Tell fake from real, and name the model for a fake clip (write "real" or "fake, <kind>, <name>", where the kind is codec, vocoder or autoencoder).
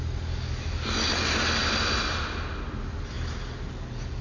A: real